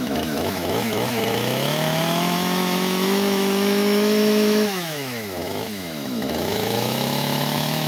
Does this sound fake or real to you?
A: fake